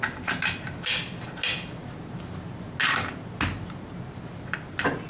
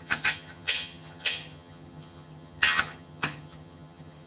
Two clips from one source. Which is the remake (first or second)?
second